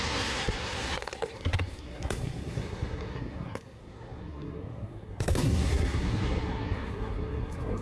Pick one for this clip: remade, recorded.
remade